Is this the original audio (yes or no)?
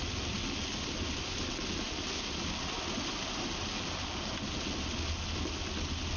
yes